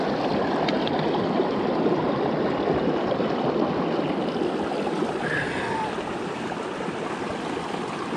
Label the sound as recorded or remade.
recorded